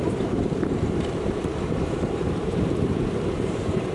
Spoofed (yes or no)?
yes